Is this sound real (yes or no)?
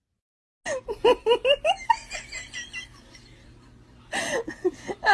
yes